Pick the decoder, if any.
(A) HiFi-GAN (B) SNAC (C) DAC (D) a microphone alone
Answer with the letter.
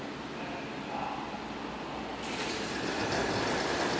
D